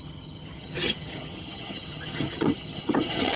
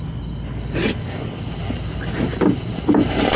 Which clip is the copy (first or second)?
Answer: first